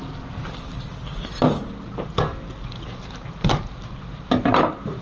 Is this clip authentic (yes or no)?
yes